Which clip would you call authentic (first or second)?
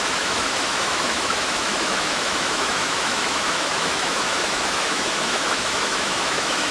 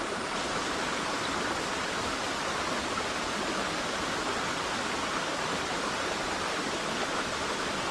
second